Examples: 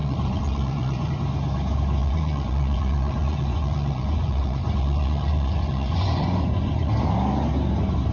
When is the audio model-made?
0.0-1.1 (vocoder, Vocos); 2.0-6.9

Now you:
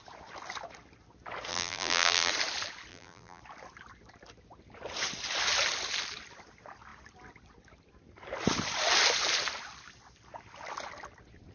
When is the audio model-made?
1.5-2.3 (vocoder, BigVGAN v2); 2.9-3.4